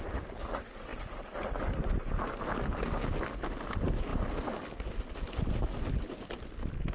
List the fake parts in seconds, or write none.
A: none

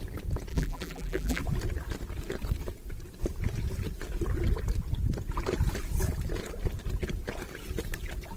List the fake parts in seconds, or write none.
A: 0.5-1.4 (vocoder, BigVGAN v2)

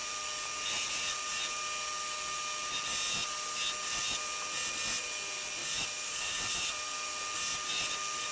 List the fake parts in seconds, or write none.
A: 5.6-6.9 (vocoder, BigVGAN v2)

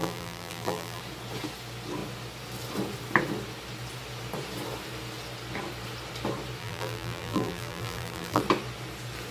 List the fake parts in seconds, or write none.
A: 0.0-1.0 (vocoder, BigVGAN v2); 6.6-8.4